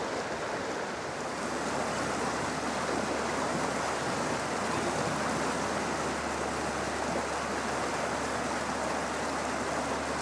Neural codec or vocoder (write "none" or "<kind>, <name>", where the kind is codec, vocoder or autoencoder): none